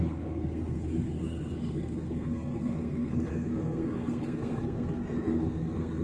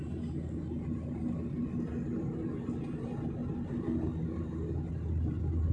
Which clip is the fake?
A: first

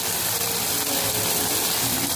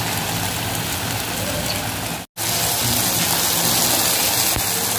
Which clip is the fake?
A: first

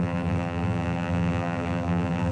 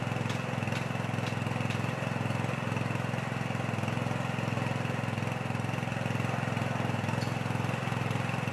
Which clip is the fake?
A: first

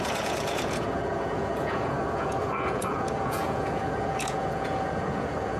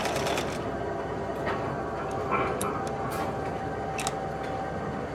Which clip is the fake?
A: first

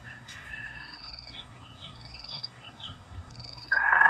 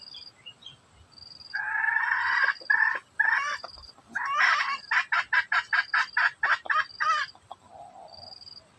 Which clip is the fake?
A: first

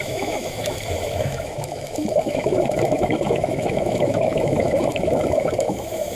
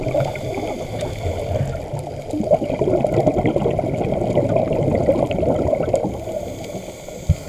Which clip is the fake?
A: first